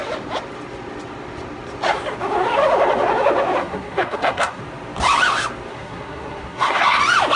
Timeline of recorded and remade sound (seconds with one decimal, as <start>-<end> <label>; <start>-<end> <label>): 0.0-3.6 recorded; 3.6-4.6 remade; 4.6-5.7 recorded; 5.7-7.0 remade; 7.0-7.4 recorded